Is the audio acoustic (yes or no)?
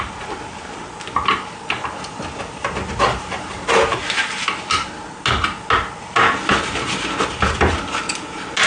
yes